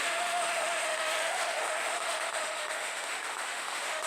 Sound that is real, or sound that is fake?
fake